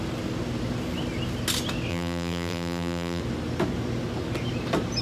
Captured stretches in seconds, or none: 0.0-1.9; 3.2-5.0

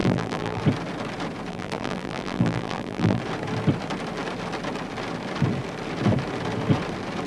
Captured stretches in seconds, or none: 0.6-1.5; 3.2-7.3

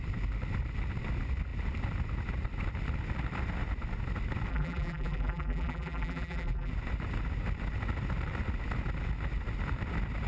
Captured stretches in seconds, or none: 0.0-4.5; 6.7-10.3

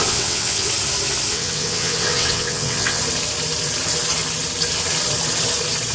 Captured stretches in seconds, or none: 0.7-1.3; 3.0-5.9